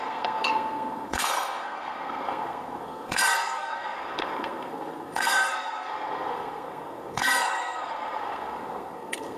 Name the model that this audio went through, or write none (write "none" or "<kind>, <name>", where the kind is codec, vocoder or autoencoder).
codec, SNAC